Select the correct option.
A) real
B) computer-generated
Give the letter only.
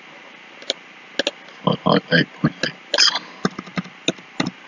A